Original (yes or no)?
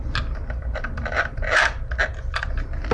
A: yes